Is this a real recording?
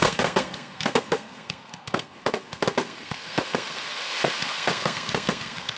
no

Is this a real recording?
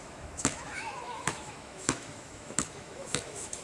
no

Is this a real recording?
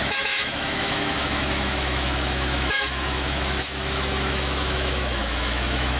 no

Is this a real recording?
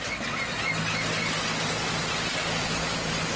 yes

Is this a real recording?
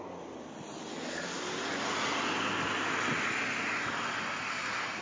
yes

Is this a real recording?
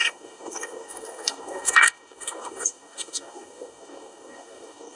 no